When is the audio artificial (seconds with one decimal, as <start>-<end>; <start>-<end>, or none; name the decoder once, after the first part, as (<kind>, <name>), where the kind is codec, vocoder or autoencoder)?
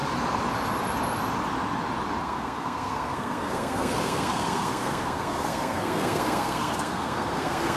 2.2-7.8 (codec, SNAC)